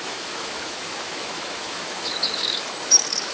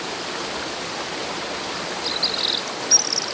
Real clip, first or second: second